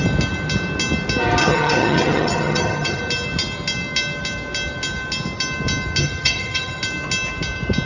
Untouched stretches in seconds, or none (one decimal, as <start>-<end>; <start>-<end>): 0.0-1.4; 3.0-6.0; 6.8-7.9